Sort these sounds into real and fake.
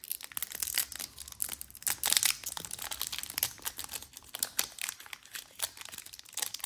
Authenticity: real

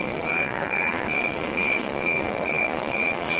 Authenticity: fake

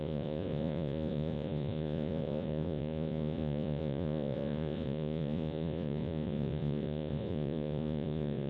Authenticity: fake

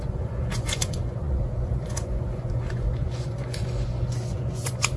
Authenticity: fake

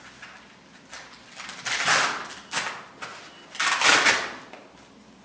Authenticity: real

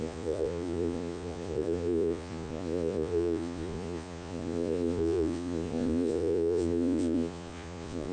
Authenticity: fake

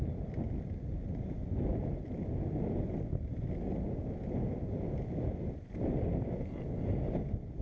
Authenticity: real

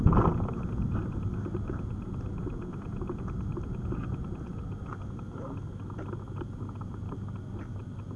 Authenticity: real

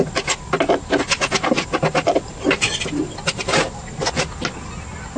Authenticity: real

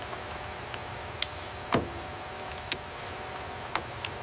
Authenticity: real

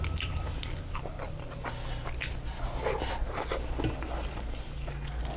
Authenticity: real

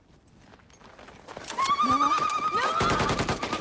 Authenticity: real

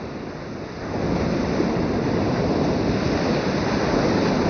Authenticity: real